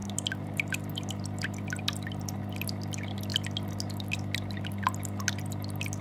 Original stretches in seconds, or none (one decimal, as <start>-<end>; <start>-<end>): 0.0-6.0